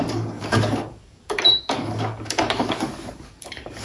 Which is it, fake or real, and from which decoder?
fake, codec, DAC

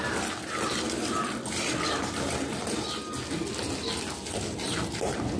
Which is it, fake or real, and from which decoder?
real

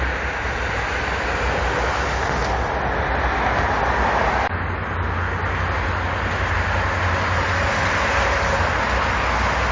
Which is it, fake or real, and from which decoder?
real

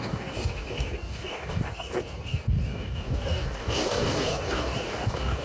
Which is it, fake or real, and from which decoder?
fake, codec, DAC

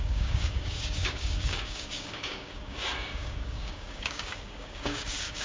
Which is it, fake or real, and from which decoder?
fake, codec, DAC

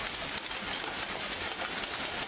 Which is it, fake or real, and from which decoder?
real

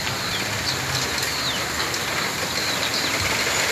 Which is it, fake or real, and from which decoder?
real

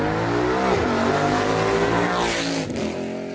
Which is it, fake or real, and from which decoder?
real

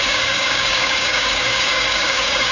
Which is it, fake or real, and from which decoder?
fake, codec, DAC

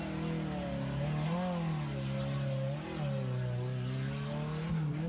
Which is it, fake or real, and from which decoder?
real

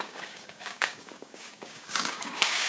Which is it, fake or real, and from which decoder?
fake, codec, DAC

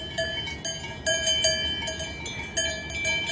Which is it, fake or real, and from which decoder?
real